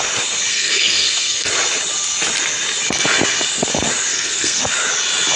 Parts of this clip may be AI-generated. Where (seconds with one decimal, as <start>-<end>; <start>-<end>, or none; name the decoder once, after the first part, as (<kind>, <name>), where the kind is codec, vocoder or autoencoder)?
0.5-1.5 (codec, SNAC); 4.1-4.6